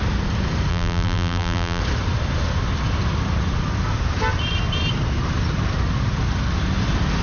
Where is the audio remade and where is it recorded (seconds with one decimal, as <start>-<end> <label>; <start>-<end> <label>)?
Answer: 0.0-0.7 recorded; 0.7-1.8 remade; 1.8-7.2 recorded